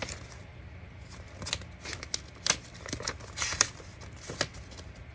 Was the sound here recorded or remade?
recorded